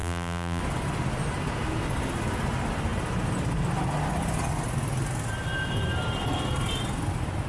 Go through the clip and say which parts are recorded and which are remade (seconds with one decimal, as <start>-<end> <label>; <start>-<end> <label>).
0.0-0.6 remade; 0.6-7.5 recorded